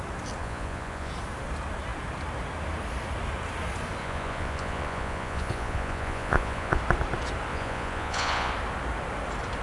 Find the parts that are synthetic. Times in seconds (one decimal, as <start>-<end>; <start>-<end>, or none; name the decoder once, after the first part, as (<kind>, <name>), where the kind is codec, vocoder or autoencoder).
0.4-1.1 (vocoder, Vocos); 4.0-6.8; 7.5-8.5